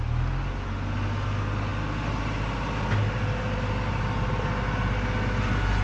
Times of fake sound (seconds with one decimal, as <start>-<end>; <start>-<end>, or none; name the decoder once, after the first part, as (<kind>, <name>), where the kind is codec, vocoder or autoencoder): none